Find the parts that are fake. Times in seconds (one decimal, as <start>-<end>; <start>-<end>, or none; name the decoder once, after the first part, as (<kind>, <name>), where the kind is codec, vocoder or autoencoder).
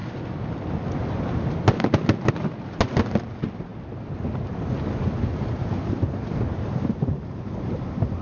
none